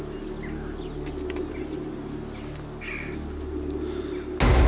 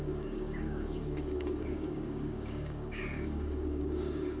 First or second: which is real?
first